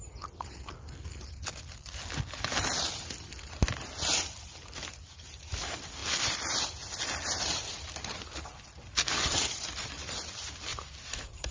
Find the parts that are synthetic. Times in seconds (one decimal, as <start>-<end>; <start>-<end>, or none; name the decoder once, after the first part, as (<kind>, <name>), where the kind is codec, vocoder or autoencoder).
10.7-11.5 (vocoder, BigVGAN v2)